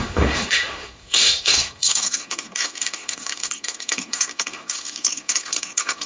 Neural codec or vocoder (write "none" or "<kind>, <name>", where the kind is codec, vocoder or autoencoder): codec, SNAC